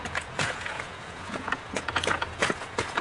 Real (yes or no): no